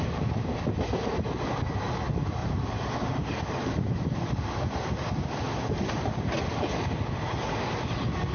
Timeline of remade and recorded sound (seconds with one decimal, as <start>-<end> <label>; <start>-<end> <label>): 0.0-2.4 recorded; 2.4-4.5 remade; 4.5-8.3 recorded